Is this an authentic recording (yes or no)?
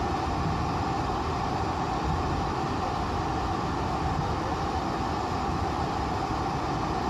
yes